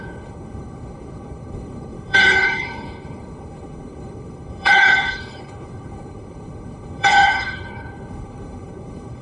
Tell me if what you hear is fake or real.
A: fake